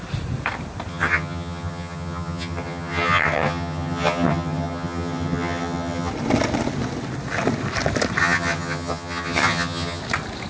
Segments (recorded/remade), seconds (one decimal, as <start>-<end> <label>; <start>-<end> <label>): 0.0-0.9 recorded; 0.9-6.1 remade; 6.1-8.2 recorded; 8.2-10.0 remade; 10.0-10.5 recorded